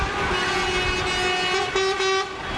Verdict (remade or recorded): recorded